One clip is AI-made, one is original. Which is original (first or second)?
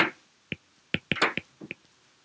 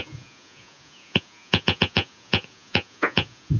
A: first